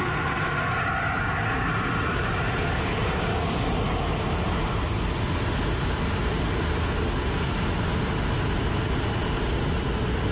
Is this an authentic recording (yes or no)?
yes